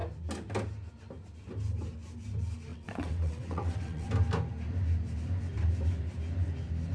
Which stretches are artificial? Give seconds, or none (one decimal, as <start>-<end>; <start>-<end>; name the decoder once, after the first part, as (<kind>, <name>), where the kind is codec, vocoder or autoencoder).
2.7-4.1 (vocoder, WaveNeXt)